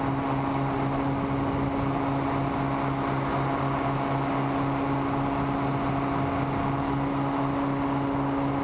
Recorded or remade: recorded